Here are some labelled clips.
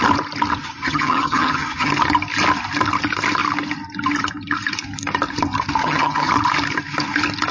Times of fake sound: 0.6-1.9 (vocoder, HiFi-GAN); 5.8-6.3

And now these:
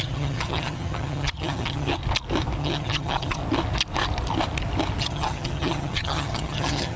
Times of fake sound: 0.0-2.0 (vocoder, HiFi-GAN); 2.6-3.4; 5.0-7.0

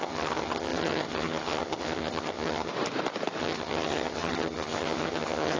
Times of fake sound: 0.0-2.7 (vocoder, HiFi-GAN); 3.4-5.6

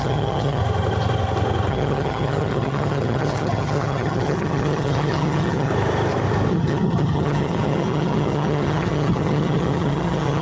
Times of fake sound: 0.0-0.6 (vocoder, HiFi-GAN); 1.7-5.7; 6.5-10.4